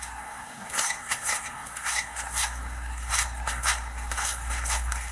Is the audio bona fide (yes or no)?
no